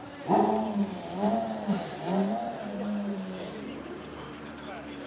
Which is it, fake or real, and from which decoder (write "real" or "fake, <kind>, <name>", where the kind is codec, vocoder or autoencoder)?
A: fake, vocoder, BigVGAN v2